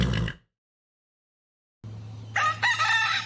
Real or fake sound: real